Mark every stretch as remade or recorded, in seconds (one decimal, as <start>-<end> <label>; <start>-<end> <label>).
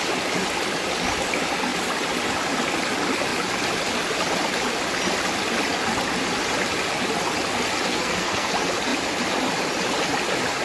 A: 0.0-7.9 recorded; 7.9-8.5 remade; 8.5-10.6 recorded